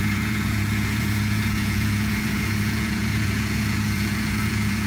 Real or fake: fake